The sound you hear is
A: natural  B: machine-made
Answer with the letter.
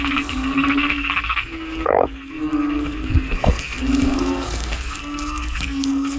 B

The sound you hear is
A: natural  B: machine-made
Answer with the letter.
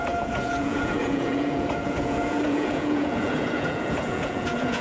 B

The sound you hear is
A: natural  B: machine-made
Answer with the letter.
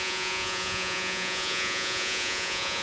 B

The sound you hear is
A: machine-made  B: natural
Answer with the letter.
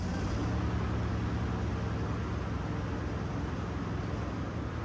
B